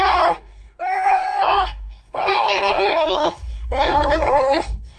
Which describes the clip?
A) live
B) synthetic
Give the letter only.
B